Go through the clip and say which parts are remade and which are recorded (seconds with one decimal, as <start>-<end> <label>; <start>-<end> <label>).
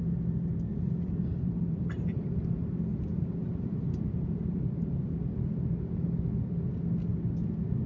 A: 0.0-0.7 recorded; 0.7-2.4 remade; 2.4-3.1 recorded; 3.1-5.1 remade; 5.1-7.9 recorded